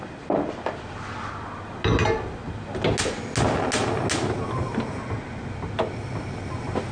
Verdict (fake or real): real